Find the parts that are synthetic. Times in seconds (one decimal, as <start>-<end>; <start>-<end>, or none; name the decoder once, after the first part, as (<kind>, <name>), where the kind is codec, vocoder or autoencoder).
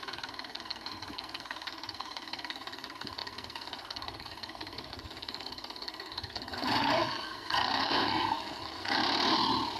0.0-9.0 (codec, SNAC)